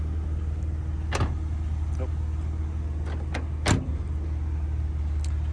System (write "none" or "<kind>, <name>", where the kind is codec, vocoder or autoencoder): none